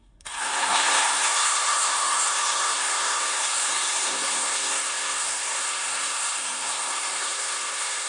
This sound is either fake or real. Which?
fake